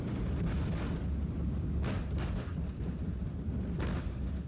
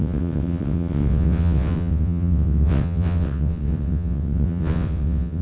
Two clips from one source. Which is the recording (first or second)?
first